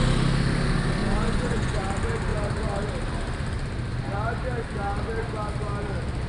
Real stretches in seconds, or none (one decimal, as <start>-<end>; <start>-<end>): 0.0-1.0; 1.8-6.3